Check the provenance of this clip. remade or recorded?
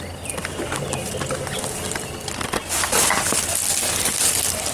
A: recorded